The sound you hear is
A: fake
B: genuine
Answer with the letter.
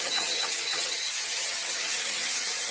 A